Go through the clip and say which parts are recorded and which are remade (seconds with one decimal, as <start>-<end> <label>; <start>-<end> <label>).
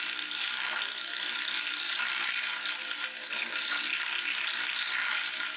0.0-5.6 recorded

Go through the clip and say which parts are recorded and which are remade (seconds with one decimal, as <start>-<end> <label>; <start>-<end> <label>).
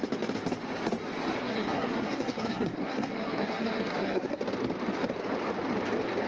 0.0-1.4 recorded; 1.4-4.4 remade; 4.4-6.3 recorded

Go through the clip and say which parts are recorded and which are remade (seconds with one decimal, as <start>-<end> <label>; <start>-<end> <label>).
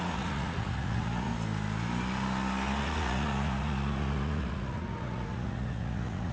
0.0-1.3 remade; 1.3-2.8 recorded; 2.8-6.3 remade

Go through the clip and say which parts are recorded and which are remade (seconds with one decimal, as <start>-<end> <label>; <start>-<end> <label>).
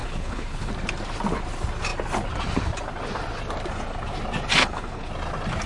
0.0-0.7 remade; 0.7-4.6 recorded; 4.6-5.1 remade; 5.1-5.7 recorded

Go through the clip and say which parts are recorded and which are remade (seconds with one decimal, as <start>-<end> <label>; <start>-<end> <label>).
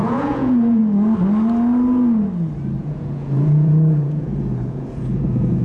0.0-0.8 remade; 0.8-2.8 recorded; 2.8-5.6 remade